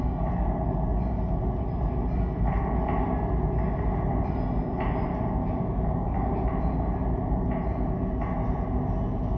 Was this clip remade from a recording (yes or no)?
no